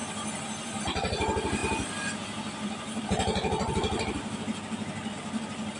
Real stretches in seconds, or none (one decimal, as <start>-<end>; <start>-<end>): none